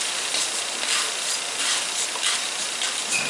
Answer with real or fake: real